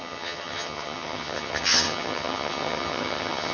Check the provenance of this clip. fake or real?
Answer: fake